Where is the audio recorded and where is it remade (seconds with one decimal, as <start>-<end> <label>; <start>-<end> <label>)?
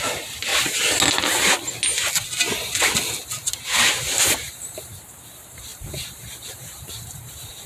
0.0-0.5 remade; 0.5-4.5 recorded; 4.5-7.7 remade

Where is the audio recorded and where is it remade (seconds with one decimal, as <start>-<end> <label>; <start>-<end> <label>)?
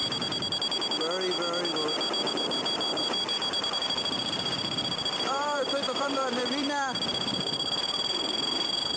0.0-2.3 recorded; 2.3-6.4 remade; 6.4-7.1 recorded; 7.1-9.0 remade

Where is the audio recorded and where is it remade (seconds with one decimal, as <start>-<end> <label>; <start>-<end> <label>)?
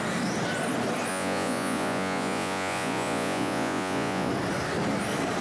0.0-1.1 recorded; 1.1-4.3 remade; 4.3-5.4 recorded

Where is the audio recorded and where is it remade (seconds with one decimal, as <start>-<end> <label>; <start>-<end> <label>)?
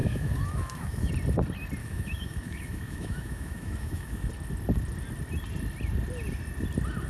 0.0-1.1 remade; 1.1-1.8 recorded; 1.8-4.3 remade; 4.3-7.1 recorded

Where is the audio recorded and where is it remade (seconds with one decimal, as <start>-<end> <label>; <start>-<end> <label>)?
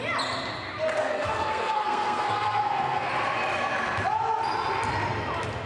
0.0-1.0 recorded; 1.0-3.1 remade; 3.1-5.7 recorded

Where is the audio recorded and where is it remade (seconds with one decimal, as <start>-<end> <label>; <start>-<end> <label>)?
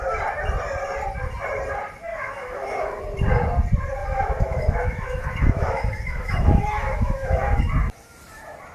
0.0-2.1 recorded; 2.1-3.0 remade; 3.0-4.0 recorded; 4.0-7.6 remade; 7.6-8.7 recorded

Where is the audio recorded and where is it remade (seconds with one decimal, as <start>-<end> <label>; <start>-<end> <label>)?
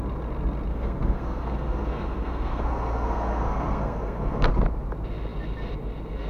0.0-0.7 recorded; 0.7-4.5 remade; 4.5-6.3 recorded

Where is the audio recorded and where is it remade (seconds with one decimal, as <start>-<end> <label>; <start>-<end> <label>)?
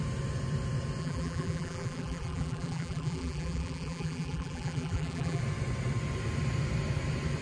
0.0-1.0 recorded; 1.0-5.4 remade; 5.4-7.4 recorded